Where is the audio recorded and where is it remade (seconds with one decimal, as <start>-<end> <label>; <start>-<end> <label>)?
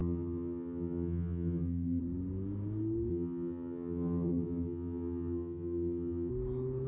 0.0-2.0 remade; 2.0-3.1 recorded; 3.1-6.3 remade; 6.3-6.9 recorded